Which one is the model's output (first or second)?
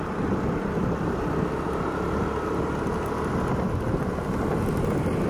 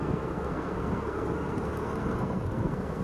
second